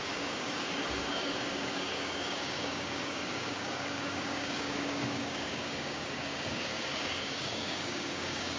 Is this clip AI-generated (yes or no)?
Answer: yes